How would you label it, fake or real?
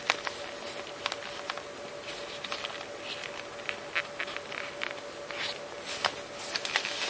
real